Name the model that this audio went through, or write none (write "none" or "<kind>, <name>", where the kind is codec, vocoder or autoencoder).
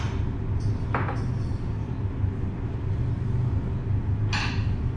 none